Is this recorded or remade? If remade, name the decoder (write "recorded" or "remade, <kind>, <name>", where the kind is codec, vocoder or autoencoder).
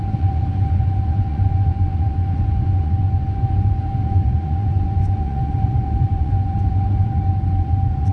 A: remade, vocoder, Vocos